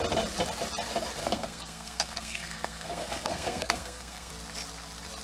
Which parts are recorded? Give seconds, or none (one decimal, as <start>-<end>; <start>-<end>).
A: 0.0-1.2; 4.3-5.2